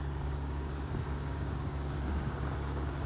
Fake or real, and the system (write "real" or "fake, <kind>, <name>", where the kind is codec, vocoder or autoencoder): fake, codec, DAC